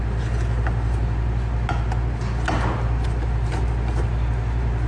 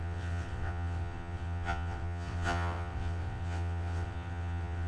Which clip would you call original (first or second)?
first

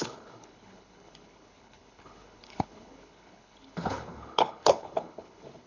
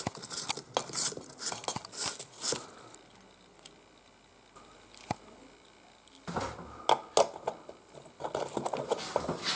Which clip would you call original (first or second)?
second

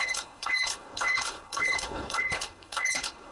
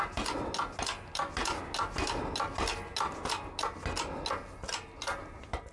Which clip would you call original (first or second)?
second